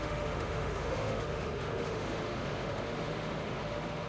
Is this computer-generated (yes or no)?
yes